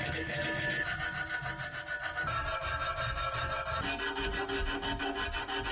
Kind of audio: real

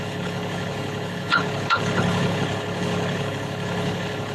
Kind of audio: fake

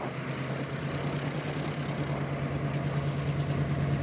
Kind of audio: real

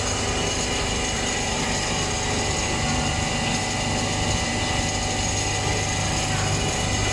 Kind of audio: real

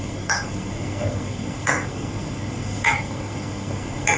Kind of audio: fake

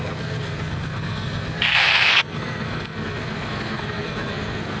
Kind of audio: fake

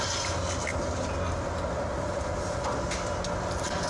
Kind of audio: real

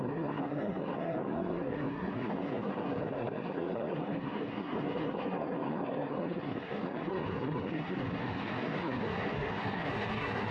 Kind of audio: fake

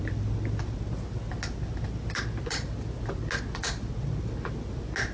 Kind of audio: real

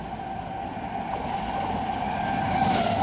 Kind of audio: real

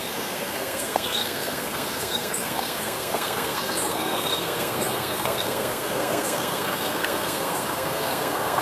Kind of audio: fake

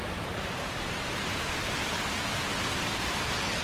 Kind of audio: real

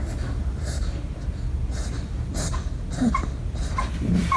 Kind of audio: real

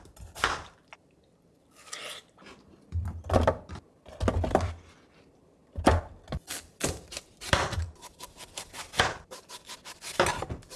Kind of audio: real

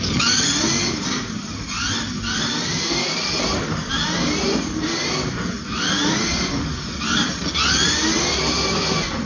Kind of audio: real